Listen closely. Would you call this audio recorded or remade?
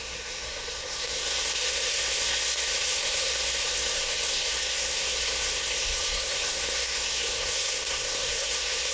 remade